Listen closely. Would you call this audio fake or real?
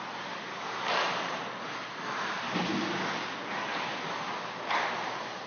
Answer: real